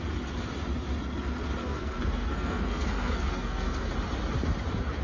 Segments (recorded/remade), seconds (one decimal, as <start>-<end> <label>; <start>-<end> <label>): 0.0-1.6 recorded; 1.6-3.9 remade; 3.9-5.0 recorded